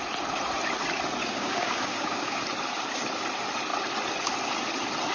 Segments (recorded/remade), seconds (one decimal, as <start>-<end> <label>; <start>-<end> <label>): 0.0-1.2 recorded; 1.2-2.4 remade; 2.4-5.1 recorded